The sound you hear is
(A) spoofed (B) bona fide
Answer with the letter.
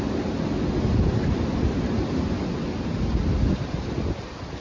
B